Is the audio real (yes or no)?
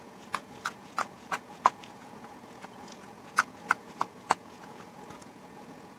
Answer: no